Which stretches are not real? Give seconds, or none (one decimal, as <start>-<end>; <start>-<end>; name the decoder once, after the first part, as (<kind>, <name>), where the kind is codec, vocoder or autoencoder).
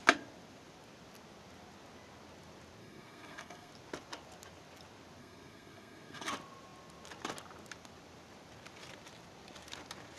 2.8-3.7 (codec, SNAC); 5.2-6.3